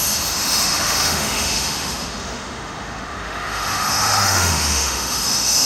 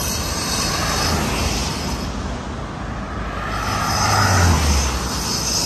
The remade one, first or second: first